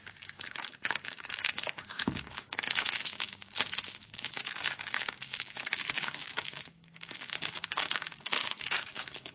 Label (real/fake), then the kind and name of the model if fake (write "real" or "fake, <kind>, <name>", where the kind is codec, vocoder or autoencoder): fake, codec, DAC